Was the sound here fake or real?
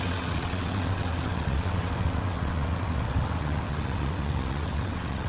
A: fake